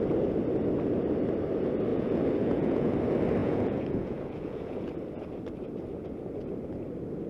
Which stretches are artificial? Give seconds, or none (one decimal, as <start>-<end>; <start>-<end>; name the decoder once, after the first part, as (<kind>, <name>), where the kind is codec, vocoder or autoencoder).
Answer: 1.9-2.9 (vocoder, Vocos); 3.4-4.9